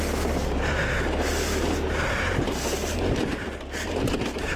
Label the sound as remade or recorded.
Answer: recorded